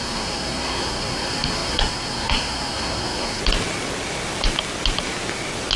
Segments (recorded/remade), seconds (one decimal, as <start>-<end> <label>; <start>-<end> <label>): 0.0-3.4 remade; 3.4-5.8 recorded